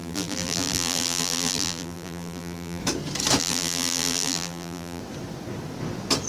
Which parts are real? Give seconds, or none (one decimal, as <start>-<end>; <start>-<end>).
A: 2.8-3.4; 5.0-6.3